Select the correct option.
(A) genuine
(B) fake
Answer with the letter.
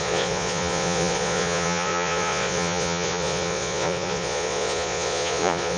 B